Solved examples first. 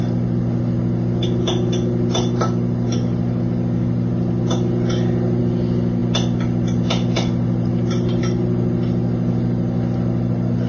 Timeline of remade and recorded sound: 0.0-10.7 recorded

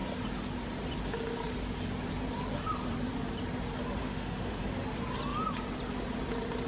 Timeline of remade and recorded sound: 0.0-4.0 recorded; 4.0-4.6 remade; 4.6-6.7 recorded

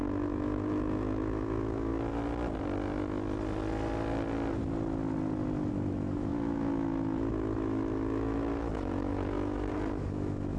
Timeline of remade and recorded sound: 0.0-1.9 remade; 1.9-5.7 recorded; 5.7-10.6 remade

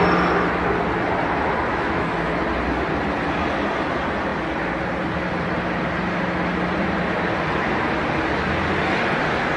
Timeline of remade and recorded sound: 0.0-1.7 recorded; 1.7-2.4 remade; 2.4-9.6 recorded

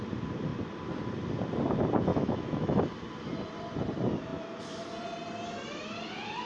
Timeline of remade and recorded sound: 0.0-2.1 recorded; 2.1-2.8 remade; 2.8-6.5 recorded